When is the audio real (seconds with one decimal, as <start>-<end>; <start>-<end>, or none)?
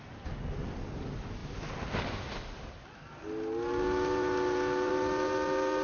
0.0-5.8